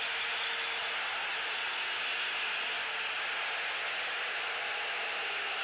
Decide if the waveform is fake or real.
real